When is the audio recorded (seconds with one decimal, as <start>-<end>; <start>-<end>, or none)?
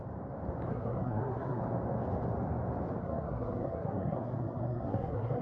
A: 0.0-0.7; 1.6-3.0